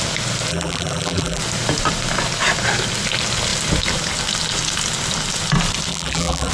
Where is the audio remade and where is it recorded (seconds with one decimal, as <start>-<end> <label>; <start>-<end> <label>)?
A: 0.0-0.5 recorded; 0.5-1.4 remade; 1.4-5.9 recorded; 5.9-6.5 remade